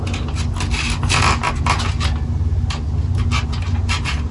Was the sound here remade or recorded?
recorded